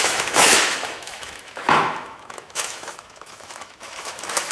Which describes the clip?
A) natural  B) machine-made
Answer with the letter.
B